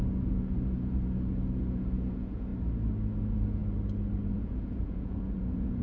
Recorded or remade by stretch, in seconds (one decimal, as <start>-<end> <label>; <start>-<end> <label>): 0.0-2.5 remade; 2.5-3.2 recorded; 3.2-3.6 remade; 3.6-4.3 recorded; 4.3-5.8 remade